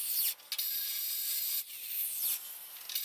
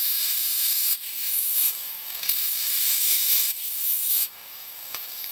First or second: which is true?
first